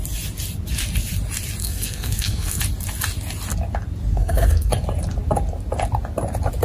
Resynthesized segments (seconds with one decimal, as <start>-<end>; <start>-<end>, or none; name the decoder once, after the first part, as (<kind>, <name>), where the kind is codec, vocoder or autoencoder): 1.6-2.6 (codec, SNAC); 4.1-4.7